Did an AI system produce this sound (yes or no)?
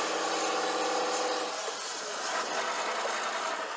no